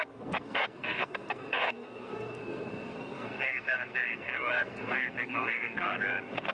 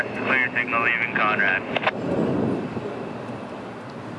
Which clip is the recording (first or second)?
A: second